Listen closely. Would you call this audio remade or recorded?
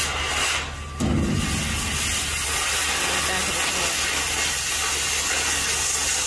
recorded